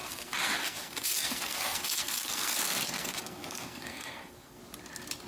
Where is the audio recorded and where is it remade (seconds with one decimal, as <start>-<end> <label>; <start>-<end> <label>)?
0.0-4.6 remade; 4.6-5.3 recorded